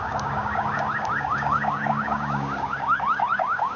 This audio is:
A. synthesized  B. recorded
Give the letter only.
A